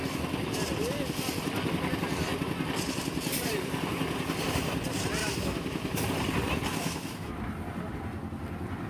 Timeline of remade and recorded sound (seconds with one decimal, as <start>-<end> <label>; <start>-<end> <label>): 0.0-5.2 recorded; 5.2-6.0 remade; 6.0-6.7 recorded; 6.7-7.3 remade; 7.3-8.9 recorded